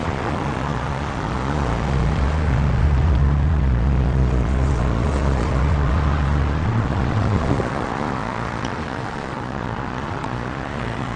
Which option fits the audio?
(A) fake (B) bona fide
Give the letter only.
A